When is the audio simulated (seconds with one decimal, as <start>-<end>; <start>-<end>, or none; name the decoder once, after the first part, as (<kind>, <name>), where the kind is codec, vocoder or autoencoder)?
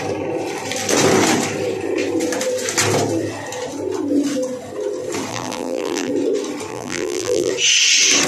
5.3-6.1 (vocoder, BigVGAN v2); 6.7-7.5